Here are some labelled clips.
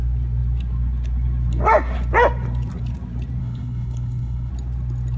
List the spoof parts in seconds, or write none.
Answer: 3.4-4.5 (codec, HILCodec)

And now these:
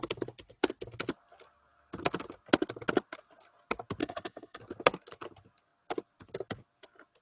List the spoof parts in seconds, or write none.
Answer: 4.0-4.6 (codec, HILCodec)

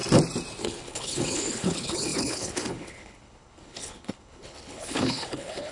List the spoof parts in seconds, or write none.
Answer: 0.6-5.7 (codec, HILCodec)

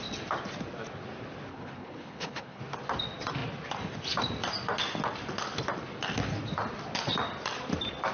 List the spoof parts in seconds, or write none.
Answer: 1.5-2.6 (codec, HILCodec)

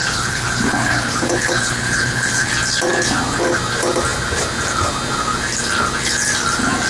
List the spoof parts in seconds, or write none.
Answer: 0.0-2.5 (codec, HILCodec)

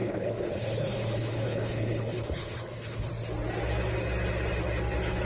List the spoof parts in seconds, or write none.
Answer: 0.0-3.1 (codec, HILCodec)

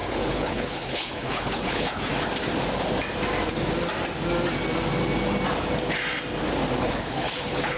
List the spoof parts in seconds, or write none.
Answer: 0.0-2.1 (codec, HILCodec); 6.8-7.8

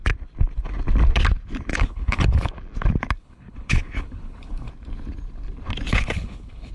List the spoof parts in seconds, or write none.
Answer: 1.7-2.5 (codec, HILCodec); 3.2-4.7; 5.9-6.7